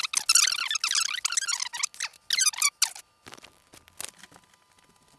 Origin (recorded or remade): recorded